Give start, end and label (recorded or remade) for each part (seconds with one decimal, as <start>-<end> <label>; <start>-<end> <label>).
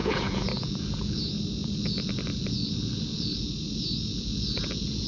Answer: 0.0-1.2 remade; 1.2-1.6 recorded; 1.6-3.5 remade; 3.5-4.1 recorded; 4.1-5.1 remade